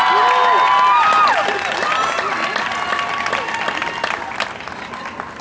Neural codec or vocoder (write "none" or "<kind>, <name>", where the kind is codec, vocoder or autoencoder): none